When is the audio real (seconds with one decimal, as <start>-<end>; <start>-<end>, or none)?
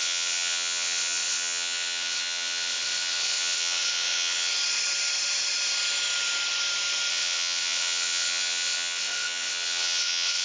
4.5-7.1